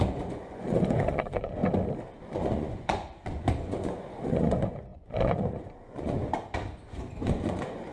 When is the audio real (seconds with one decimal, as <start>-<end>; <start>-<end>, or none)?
1.6-2.2